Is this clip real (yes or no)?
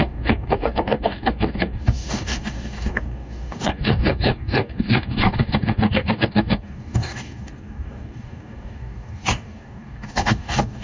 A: no